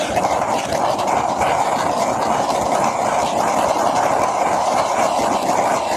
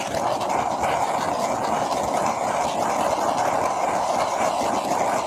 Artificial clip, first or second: first